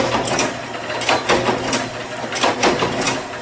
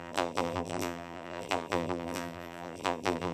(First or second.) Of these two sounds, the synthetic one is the second